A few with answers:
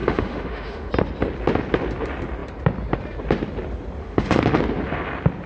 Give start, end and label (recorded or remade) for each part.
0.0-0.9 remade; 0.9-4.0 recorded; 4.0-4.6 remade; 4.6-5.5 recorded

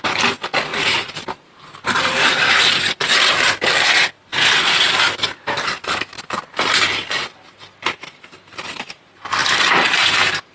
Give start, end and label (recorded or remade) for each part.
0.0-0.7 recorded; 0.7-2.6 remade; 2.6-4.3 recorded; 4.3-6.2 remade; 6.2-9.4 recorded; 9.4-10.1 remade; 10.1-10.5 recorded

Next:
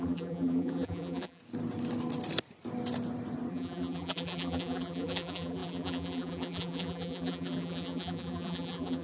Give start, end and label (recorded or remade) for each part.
0.0-1.4 remade; 1.4-3.5 recorded; 3.5-9.0 remade

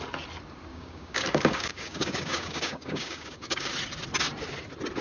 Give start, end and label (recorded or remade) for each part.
0.0-0.7 recorded; 0.7-3.7 remade; 3.7-5.0 recorded